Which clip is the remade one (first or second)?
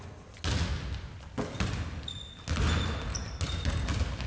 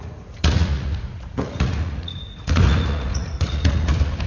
second